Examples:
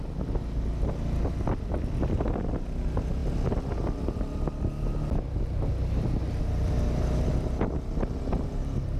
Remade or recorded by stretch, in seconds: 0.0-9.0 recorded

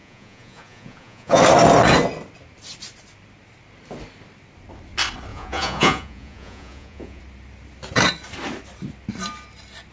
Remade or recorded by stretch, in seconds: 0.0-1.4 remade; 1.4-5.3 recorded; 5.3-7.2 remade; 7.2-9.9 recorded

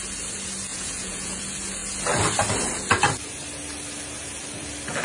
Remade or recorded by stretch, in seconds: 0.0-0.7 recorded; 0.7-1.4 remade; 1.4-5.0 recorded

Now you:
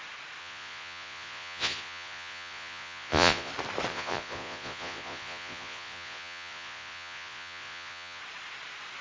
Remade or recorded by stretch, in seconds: 0.0-0.4 recorded; 0.4-3.5 remade; 3.5-3.9 recorded; 3.9-8.2 remade; 8.2-9.0 recorded

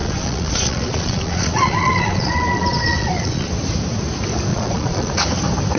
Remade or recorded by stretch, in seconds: 0.0-3.5 remade; 3.5-4.5 recorded; 4.5-5.1 remade; 5.1-5.8 recorded

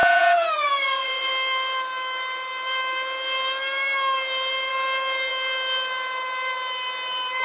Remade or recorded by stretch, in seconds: 0.0-1.3 remade; 1.3-7.4 recorded

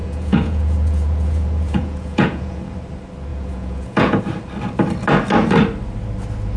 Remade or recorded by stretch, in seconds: 0.0-2.6 remade; 2.6-3.3 recorded; 3.3-4.2 remade; 4.2-6.6 recorded